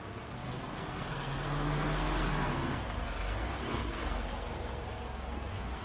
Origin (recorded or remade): remade